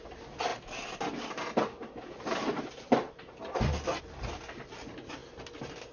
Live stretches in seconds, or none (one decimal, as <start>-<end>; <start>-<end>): 0.0-5.9